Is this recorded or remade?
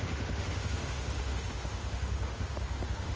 remade